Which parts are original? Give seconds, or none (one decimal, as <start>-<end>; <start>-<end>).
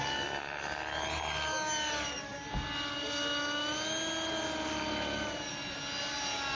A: 0.0-6.5